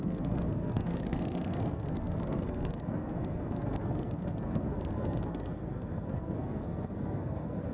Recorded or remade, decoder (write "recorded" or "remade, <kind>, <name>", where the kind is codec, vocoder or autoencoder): remade, codec, SNAC